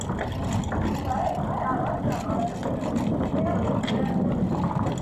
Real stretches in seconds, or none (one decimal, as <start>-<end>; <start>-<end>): 0.0-5.0

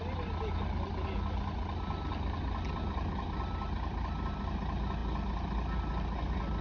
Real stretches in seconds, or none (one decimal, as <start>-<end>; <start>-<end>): 0.0-6.6

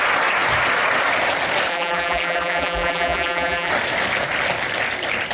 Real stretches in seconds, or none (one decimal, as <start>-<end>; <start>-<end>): 0.0-1.7; 3.7-5.3

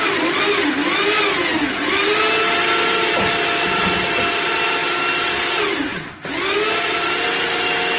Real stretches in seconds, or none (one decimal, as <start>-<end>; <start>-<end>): 0.0-8.0

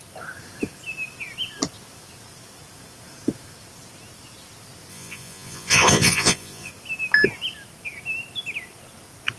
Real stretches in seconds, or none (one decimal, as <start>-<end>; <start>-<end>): 0.0-4.9; 6.7-9.4